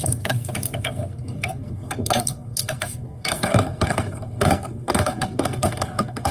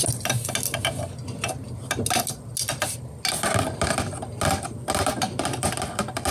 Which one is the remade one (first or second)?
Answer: first